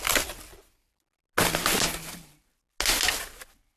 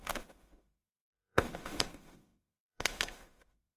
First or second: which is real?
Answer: first